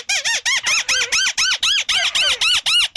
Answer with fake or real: real